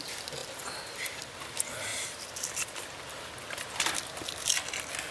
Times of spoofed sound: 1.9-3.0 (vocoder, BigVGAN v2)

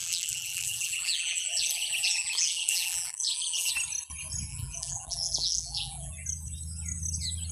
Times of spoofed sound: 0.0-3.7 (vocoder, BigVGAN v2); 4.5-6.1

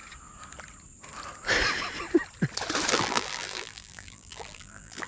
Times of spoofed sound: 2.9-5.1 (vocoder, BigVGAN v2)

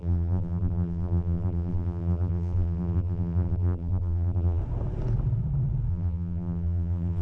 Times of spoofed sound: 0.0-4.6 (vocoder, BigVGAN v2); 5.9-7.2

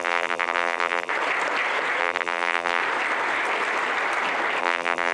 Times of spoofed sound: 0.0-1.1 (vocoder, BigVGAN v2); 2.0-2.8; 4.6-5.1

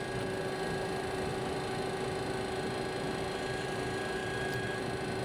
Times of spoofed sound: 4.2-4.8 (vocoder, BigVGAN v2)